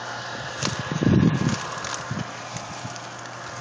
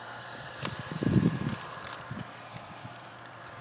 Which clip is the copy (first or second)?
second